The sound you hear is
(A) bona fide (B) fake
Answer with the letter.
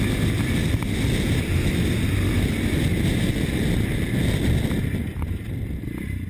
B